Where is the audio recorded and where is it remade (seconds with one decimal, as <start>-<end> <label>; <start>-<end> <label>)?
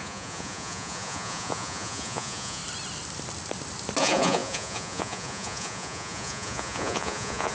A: 0.0-2.6 remade; 2.6-4.0 recorded; 4.0-7.5 remade